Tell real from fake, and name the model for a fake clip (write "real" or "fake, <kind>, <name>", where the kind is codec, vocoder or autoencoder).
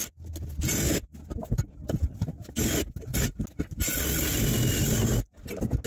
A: real